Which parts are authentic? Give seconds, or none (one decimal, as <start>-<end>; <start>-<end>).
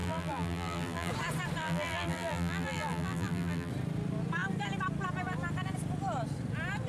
1.1-1.6; 3.7-6.9